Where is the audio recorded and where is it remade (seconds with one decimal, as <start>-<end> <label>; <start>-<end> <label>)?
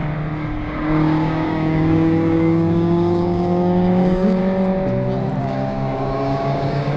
0.0-0.6 recorded; 0.6-4.4 remade; 4.4-5.4 recorded; 5.4-7.0 remade